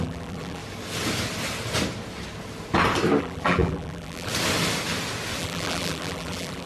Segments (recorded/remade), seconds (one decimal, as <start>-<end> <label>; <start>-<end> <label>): 0.0-0.6 remade; 0.6-3.2 recorded; 3.2-4.3 remade; 4.3-5.4 recorded; 5.4-6.7 remade